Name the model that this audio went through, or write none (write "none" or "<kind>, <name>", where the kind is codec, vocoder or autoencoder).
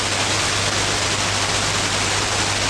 none